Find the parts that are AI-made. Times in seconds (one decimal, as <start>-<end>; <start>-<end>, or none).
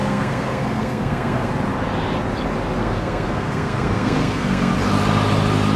0.0-1.5; 2.8-4.7